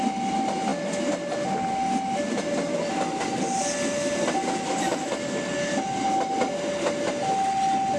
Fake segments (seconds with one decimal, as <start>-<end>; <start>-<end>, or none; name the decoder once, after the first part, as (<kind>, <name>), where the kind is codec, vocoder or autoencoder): none